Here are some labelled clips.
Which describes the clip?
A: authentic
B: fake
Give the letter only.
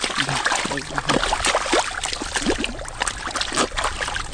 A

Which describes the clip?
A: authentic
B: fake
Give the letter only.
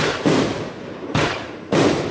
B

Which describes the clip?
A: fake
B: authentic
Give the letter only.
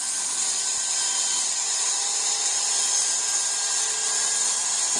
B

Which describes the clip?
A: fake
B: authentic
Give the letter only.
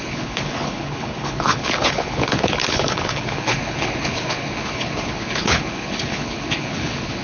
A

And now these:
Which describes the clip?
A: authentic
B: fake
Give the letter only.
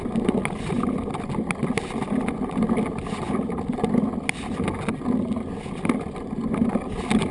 A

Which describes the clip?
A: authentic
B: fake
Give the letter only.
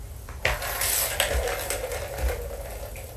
A